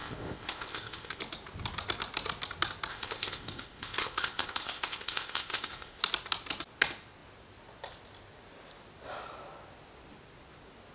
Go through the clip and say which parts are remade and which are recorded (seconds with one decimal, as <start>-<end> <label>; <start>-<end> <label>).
0.0-1.2 remade; 1.2-2.9 recorded; 2.9-6.0 remade; 6.0-10.9 recorded